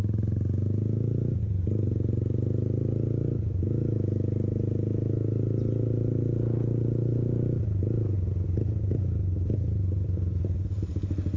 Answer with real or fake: real